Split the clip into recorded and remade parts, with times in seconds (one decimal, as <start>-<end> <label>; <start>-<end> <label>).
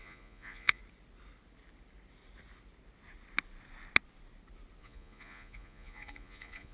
0.0-0.8 remade; 0.8-4.8 recorded; 4.8-6.7 remade